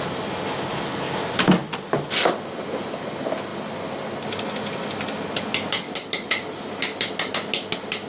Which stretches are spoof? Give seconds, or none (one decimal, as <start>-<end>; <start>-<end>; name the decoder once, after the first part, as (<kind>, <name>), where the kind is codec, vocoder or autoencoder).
none